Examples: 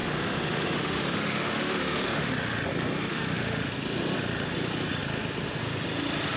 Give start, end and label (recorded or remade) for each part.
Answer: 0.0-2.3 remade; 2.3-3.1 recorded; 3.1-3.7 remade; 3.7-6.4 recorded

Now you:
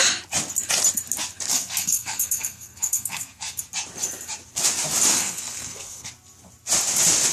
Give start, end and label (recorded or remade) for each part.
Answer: 0.0-1.5 recorded; 1.5-3.6 remade; 3.6-5.1 recorded; 5.1-6.1 remade; 6.1-7.3 recorded

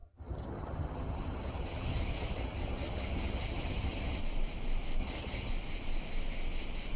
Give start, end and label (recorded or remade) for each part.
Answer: 0.0-4.2 remade; 4.2-5.0 recorded; 5.0-5.5 remade; 5.5-7.0 recorded